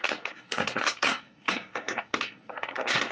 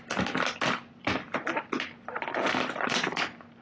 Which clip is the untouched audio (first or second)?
second